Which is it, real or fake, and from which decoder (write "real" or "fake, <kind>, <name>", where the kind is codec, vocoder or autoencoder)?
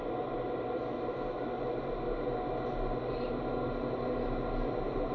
real